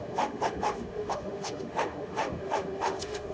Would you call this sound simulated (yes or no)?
yes